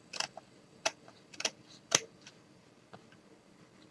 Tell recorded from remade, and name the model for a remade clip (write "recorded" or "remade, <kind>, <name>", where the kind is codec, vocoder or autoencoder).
recorded